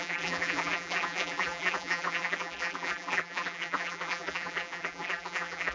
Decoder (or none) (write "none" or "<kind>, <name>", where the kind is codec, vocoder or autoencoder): vocoder, BigVGAN v2